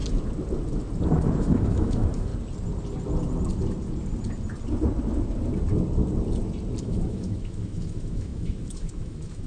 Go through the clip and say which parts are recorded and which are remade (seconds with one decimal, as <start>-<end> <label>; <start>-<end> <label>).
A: 0.0-1.4 recorded; 1.4-2.3 remade; 2.3-6.8 recorded; 6.8-9.5 remade